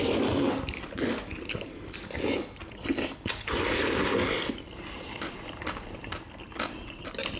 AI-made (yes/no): no